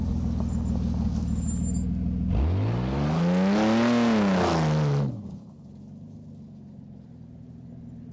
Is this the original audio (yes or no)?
yes